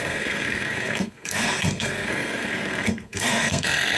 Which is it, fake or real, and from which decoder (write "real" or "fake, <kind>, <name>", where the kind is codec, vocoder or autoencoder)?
fake, codec, SNAC